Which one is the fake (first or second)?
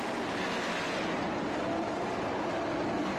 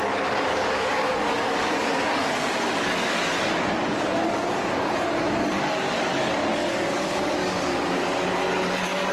second